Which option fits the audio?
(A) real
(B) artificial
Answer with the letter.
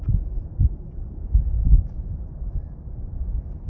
A